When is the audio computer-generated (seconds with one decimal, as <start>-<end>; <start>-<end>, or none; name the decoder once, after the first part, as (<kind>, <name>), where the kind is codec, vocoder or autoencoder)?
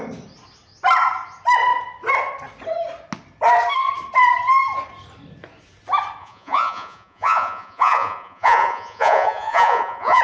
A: 6.2-10.2 (vocoder, Vocos)